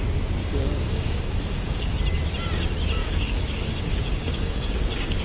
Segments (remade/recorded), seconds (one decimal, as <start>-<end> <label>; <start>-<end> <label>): 0.0-0.4 recorded; 0.4-1.9 remade; 1.9-3.0 recorded; 3.0-5.2 remade